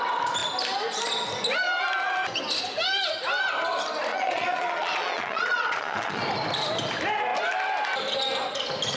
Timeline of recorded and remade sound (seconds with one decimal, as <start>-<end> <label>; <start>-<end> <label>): 0.0-4.1 recorded; 4.1-6.2 remade; 6.2-9.0 recorded